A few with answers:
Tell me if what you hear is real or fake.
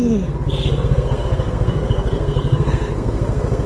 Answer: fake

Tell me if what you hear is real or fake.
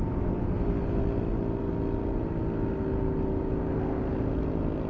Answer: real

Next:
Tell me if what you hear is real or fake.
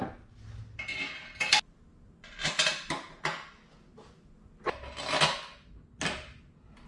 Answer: real